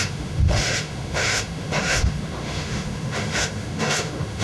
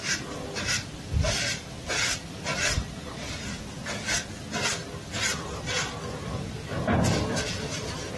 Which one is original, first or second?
second